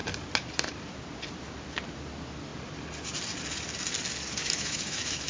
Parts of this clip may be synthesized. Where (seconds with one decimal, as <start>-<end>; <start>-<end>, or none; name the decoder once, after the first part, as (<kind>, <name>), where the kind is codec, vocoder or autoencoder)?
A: 4.4-5.3 (autoencoder, DAC-VAE)